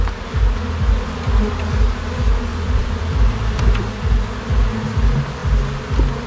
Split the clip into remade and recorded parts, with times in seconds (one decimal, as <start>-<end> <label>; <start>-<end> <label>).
0.0-2.5 recorded; 2.5-3.8 remade; 3.8-6.3 recorded